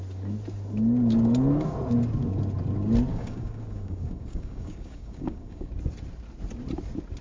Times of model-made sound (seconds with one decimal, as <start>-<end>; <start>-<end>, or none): 3.1-5.7